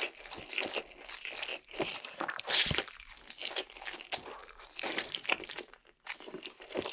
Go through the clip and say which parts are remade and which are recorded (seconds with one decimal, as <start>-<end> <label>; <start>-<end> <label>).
0.0-1.5 recorded; 1.5-3.3 remade; 3.3-4.4 recorded; 4.4-6.9 remade